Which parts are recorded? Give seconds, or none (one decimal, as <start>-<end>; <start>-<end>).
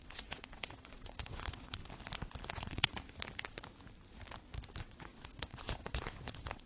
1.8-2.5; 2.9-4.8